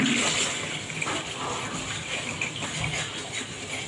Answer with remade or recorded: recorded